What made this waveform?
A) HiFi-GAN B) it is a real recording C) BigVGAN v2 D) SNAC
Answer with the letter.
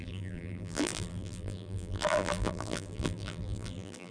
C